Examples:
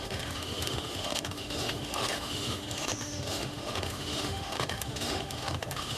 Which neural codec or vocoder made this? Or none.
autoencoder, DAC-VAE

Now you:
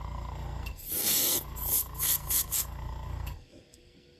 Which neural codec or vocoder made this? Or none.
codec, SNAC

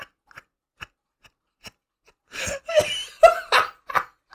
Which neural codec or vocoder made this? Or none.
none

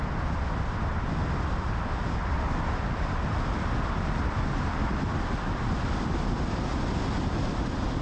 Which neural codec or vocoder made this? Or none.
none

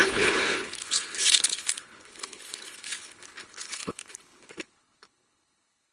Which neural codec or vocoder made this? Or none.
codec, HILCodec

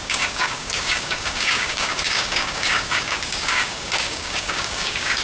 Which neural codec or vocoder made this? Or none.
codec, DAC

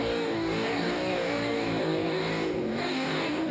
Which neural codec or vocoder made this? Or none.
codec, DAC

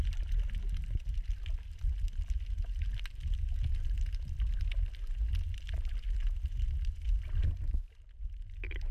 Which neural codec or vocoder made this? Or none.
none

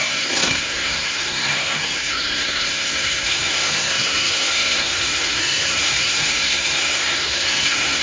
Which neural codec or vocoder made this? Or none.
codec, SNAC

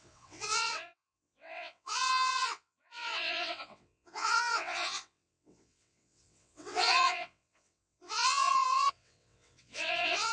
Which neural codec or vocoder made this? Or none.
vocoder, WaveNeXt